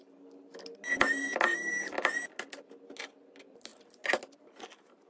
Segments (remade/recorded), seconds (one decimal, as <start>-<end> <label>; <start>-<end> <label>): 0.0-5.1 recorded